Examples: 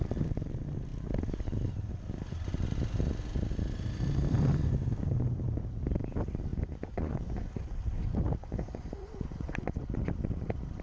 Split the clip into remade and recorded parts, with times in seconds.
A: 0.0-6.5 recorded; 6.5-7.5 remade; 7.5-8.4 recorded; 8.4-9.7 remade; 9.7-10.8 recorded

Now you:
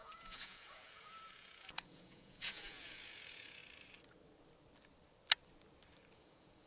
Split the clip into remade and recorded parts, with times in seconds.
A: 0.0-3.6 remade; 3.6-6.1 recorded; 6.1-6.7 remade

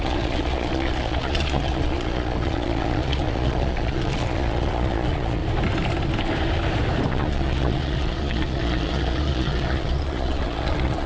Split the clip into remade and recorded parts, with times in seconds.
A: 0.0-5.4 remade; 5.4-7.1 recorded; 7.1-11.1 remade

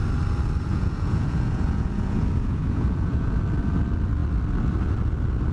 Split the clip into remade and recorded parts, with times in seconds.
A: 0.0-0.7 recorded; 0.7-3.4 remade; 3.4-5.5 recorded

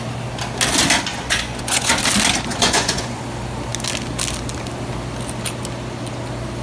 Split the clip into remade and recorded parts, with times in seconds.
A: 0.0-1.1 recorded; 1.1-2.0 remade; 2.0-2.5 recorded; 2.5-3.2 remade; 3.2-6.6 recorded

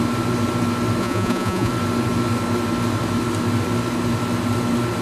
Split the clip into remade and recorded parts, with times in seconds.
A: 0.0-1.0 recorded; 1.0-1.7 remade; 1.7-5.0 recorded